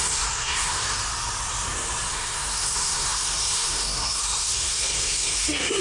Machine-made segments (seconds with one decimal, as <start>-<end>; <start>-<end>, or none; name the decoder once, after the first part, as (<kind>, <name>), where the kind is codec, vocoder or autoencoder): 0.0-1.0 (codec, SNAC); 2.1-5.8